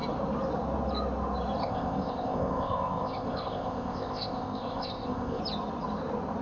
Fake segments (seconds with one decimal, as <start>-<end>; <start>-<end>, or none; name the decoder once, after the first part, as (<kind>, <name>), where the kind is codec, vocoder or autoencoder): 1.6-5.4 (codec, ZipCodec)